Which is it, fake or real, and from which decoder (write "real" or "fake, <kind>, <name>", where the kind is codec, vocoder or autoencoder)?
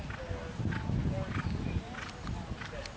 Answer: real